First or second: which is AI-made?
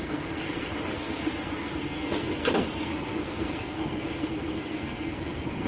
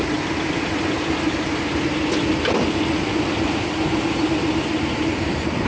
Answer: first